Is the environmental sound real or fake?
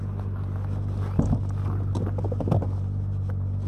real